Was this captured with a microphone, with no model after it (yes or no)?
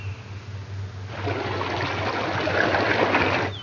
yes